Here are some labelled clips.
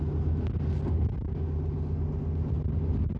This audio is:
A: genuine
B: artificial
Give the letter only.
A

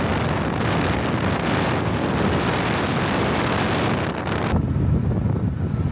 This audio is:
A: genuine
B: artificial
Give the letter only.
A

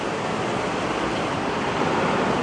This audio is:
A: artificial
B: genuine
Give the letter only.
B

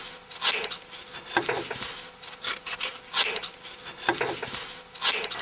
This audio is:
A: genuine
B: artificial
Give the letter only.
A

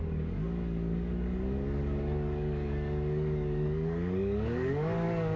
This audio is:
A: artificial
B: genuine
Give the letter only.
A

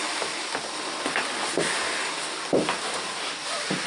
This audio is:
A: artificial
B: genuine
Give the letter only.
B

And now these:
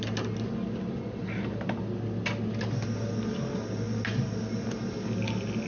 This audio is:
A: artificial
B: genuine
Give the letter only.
B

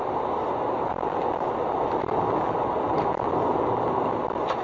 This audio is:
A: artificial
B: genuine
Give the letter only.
B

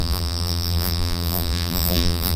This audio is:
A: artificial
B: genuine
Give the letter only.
A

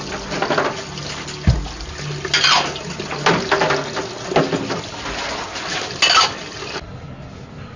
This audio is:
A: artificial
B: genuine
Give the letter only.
B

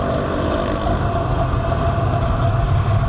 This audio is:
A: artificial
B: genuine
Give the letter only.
B